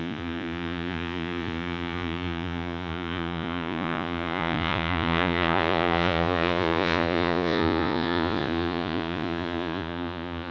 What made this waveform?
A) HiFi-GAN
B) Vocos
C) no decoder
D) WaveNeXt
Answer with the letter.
B